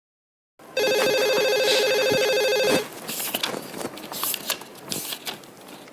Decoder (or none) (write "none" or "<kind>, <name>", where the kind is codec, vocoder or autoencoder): none